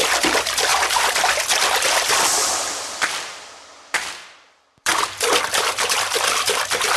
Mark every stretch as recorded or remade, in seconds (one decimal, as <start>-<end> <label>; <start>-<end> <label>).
0.0-4.9 remade; 4.9-5.5 recorded; 5.5-7.0 remade